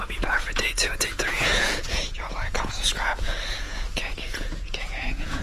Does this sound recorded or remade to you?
remade